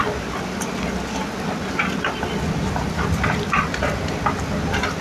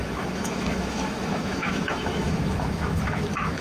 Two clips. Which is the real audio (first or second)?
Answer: first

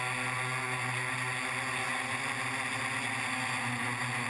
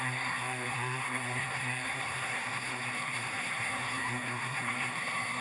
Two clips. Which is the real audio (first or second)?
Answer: first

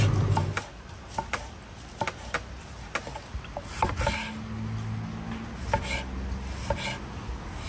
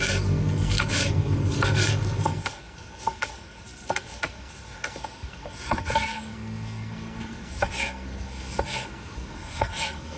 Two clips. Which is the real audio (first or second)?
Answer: first